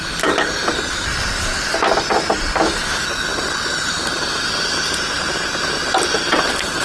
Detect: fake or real real